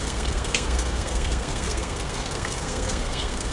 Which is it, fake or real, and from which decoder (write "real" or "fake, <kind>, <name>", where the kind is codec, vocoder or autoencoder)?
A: fake, codec, SNAC